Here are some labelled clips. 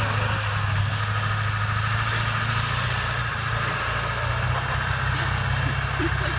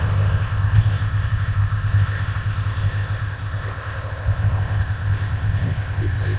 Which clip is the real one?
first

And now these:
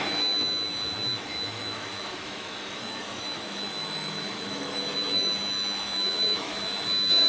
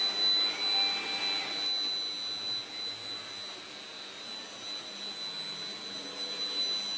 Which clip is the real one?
second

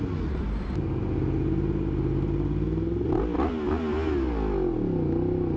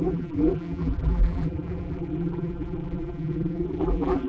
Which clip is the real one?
first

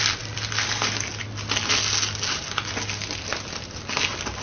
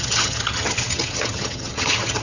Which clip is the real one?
first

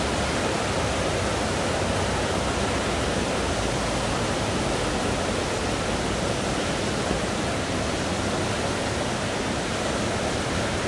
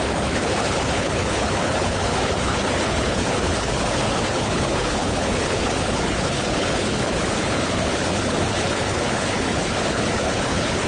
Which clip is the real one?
first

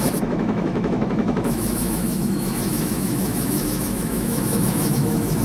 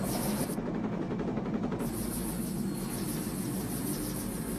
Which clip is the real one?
second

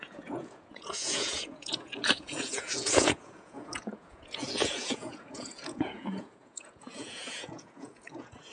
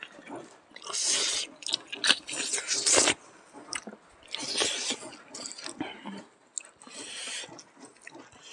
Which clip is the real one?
second